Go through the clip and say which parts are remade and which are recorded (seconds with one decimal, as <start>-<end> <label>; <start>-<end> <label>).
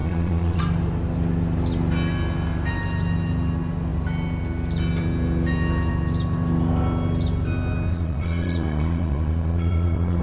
0.0-0.6 remade; 0.6-7.9 recorded; 7.9-10.2 remade